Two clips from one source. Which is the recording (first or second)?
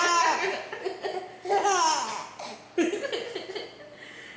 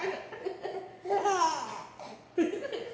first